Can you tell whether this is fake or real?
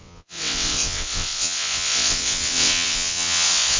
fake